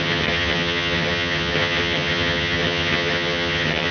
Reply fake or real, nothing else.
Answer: fake